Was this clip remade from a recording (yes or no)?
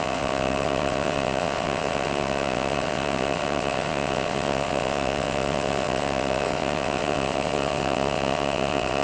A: yes